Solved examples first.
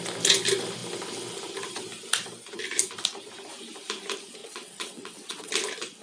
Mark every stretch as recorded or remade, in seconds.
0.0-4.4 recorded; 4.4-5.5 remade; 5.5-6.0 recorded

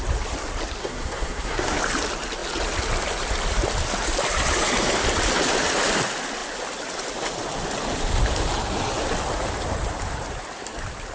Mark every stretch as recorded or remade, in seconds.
0.0-0.8 recorded; 0.8-1.8 remade; 1.8-11.1 recorded

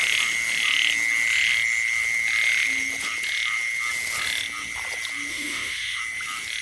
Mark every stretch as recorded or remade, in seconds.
0.0-5.3 recorded; 5.3-6.0 remade; 6.0-6.6 recorded

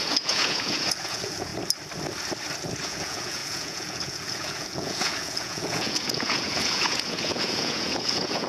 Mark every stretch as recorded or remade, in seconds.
0.0-1.5 remade; 1.5-2.8 recorded; 2.8-8.5 remade

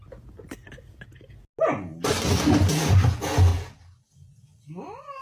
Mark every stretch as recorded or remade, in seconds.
0.0-5.2 recorded